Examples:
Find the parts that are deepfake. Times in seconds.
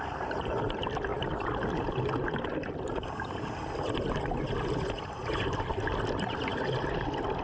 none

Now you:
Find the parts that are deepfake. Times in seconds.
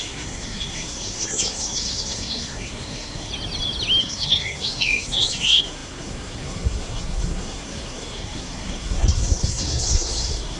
0.0-3.3 (codec, SNAC); 4.0-10.6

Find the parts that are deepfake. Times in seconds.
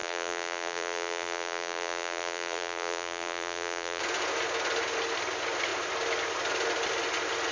0.0-4.0 (vocoder, BigVGAN v2)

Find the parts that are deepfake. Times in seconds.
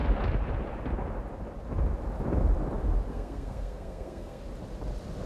3.1-4.4 (codec, SNAC)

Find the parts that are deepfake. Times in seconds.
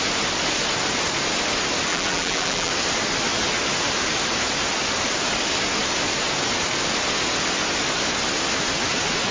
1.9-2.7 (vocoder, BigVGAN v2)